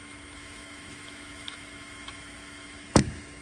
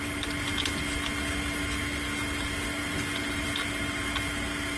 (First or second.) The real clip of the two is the second